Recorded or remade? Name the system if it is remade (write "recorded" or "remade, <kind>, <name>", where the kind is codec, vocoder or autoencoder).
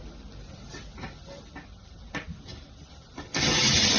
recorded